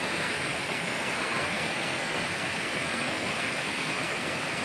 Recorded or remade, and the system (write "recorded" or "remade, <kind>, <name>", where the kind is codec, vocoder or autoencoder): remade, codec, SNAC